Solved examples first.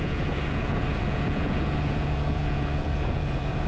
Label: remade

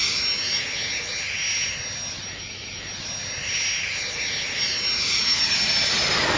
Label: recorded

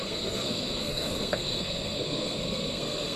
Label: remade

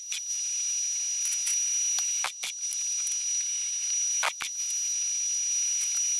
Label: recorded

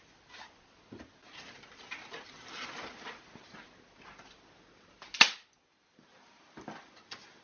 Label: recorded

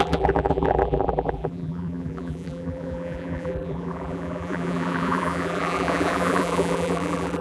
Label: remade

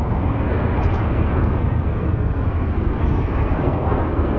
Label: remade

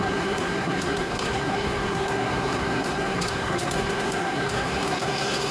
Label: remade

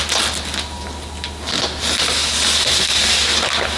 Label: recorded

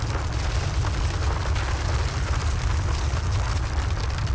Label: recorded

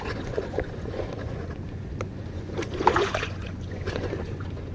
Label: remade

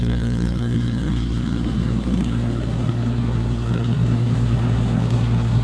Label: remade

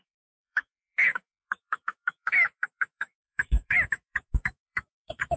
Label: remade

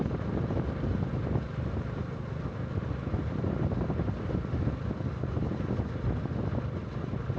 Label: recorded